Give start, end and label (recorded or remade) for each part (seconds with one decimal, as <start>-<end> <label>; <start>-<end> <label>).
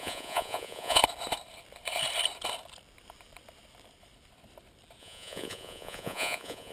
0.0-1.0 remade; 1.0-5.0 recorded; 5.0-6.7 remade